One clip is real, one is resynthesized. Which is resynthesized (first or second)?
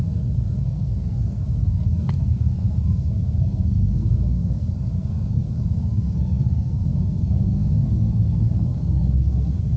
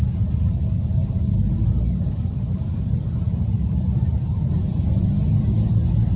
first